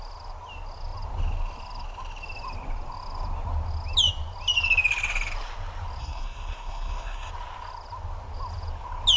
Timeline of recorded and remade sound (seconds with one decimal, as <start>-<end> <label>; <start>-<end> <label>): 0.0-6.0 recorded; 6.0-7.3 remade; 7.3-9.2 recorded